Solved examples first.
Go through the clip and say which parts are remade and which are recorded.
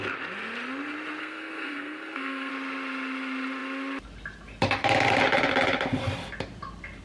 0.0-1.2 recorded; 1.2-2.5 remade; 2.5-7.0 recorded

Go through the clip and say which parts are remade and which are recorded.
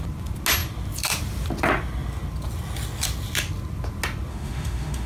0.0-4.3 recorded; 4.3-5.1 remade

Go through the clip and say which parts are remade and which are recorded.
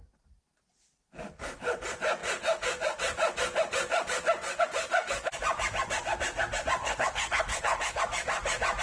0.0-6.8 recorded; 6.8-8.0 remade; 8.0-8.8 recorded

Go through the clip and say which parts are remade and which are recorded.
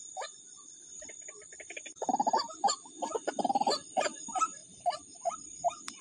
0.0-3.6 remade; 3.6-4.6 recorded; 4.6-5.2 remade; 5.2-6.0 recorded